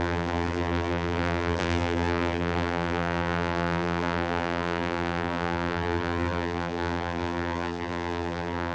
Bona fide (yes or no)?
no